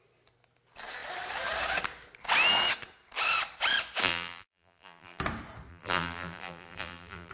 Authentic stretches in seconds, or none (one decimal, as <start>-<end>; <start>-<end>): 0.0-4.0; 5.2-5.7